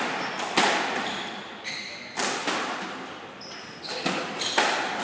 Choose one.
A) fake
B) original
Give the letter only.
B